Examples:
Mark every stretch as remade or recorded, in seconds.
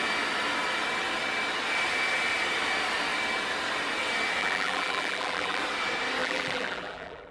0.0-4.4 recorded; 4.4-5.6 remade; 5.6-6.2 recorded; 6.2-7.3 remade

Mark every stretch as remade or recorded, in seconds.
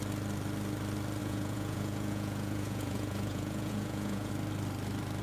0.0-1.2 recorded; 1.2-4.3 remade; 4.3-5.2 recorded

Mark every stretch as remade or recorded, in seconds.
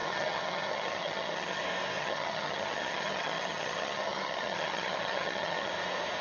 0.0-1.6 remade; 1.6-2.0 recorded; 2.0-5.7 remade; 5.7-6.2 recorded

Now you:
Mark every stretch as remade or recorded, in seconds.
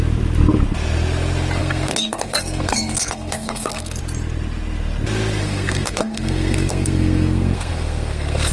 0.0-1.6 recorded; 1.6-4.0 remade; 4.0-5.4 recorded; 5.4-8.5 remade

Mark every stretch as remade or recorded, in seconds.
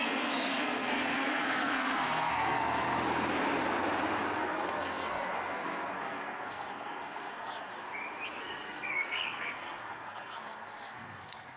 0.0-2.9 remade; 2.9-4.4 recorded; 4.4-7.7 remade; 7.7-8.3 recorded; 8.3-11.6 remade